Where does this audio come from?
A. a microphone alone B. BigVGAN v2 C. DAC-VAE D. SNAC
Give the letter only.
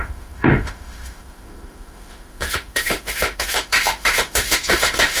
C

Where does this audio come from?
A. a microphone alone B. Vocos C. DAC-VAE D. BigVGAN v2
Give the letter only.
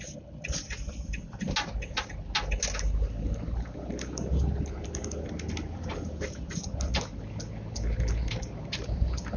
A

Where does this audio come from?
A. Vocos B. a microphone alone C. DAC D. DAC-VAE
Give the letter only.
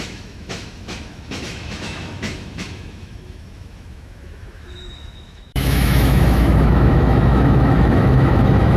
D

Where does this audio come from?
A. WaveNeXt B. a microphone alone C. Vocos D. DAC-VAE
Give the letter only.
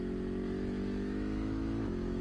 D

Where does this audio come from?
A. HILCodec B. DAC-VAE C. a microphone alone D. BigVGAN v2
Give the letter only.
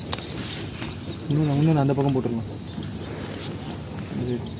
C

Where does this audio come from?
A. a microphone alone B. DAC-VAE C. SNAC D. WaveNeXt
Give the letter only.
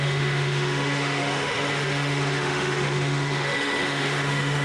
B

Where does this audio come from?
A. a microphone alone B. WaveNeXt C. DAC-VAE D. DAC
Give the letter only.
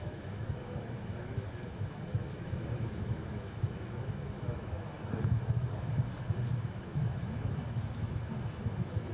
C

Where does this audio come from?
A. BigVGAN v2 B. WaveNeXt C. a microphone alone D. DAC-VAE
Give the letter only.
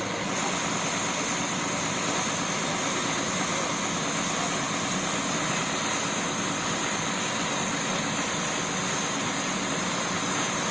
C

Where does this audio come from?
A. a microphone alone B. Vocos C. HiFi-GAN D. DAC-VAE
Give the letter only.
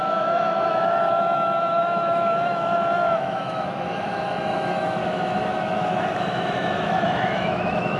D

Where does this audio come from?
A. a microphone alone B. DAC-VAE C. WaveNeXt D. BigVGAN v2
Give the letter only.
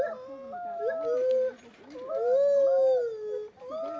A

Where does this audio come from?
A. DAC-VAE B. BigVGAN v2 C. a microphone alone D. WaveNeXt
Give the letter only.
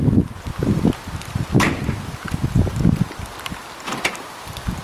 C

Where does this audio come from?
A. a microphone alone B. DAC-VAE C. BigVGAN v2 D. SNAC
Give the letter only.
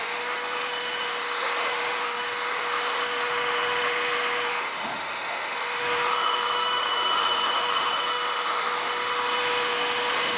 B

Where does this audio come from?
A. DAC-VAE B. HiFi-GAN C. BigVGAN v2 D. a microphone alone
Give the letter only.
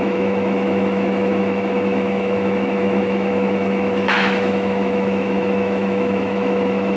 A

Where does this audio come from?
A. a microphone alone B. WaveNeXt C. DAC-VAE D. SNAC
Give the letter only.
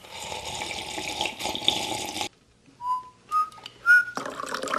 A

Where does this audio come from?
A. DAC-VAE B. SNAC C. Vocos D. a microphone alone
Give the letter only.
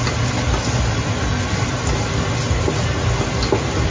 D